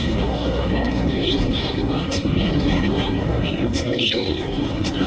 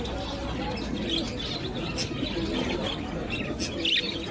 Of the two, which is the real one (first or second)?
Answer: second